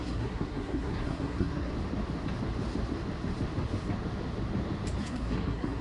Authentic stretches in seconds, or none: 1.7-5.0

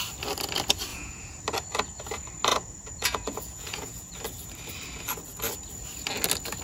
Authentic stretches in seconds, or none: 0.0-0.9; 1.4-2.5; 4.1-6.6

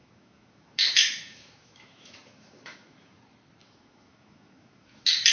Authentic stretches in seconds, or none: 3.2-3.6

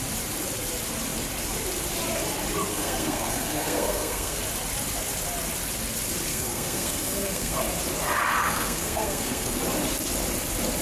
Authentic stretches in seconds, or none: 0.0-2.7; 4.4-6.3; 7.6-8.4; 9.6-10.8

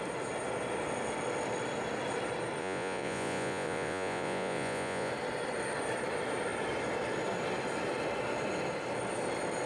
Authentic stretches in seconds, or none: 0.0-2.6; 5.1-9.7

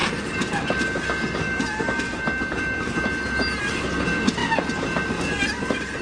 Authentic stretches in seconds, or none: 0.0-6.0